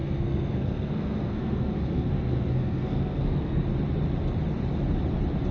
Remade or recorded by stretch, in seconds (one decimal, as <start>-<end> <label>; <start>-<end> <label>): 0.0-3.6 remade; 3.6-5.5 recorded